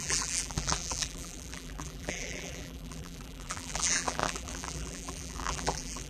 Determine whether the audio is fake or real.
fake